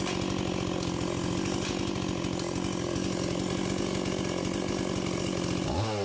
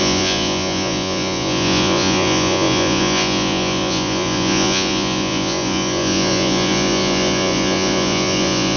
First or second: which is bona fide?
first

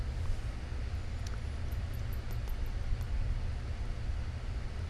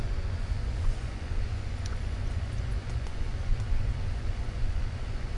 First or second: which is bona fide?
first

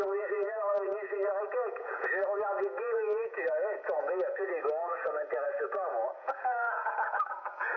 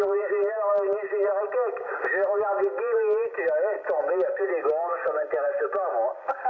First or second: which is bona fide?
second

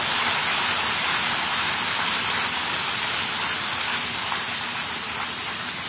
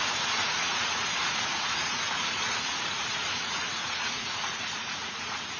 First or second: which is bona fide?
first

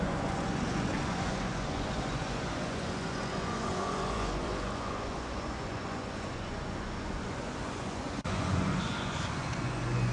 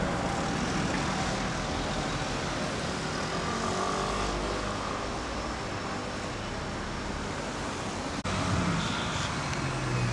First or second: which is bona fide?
second